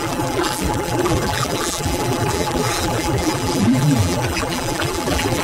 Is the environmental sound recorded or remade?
remade